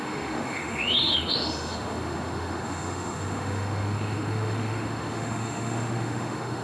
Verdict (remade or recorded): remade